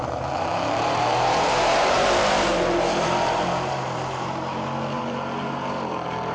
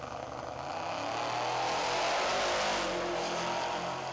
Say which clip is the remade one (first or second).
first